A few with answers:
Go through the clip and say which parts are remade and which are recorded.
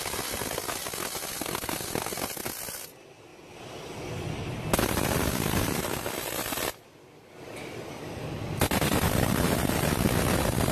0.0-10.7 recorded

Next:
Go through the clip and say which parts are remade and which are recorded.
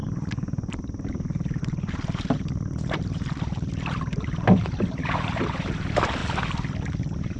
0.0-6.2 remade; 6.2-7.0 recorded; 7.0-7.4 remade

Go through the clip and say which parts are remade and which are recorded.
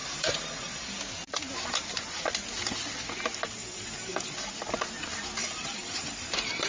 0.0-1.0 remade; 1.0-3.6 recorded; 3.6-4.3 remade; 4.3-5.4 recorded; 5.4-6.7 remade